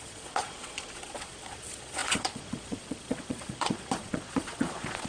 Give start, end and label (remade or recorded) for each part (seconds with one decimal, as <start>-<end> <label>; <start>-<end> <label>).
0.0-5.1 remade